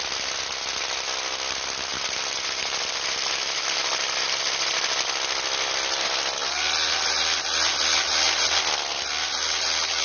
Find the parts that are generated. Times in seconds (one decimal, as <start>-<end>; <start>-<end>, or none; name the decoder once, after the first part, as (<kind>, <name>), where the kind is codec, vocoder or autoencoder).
none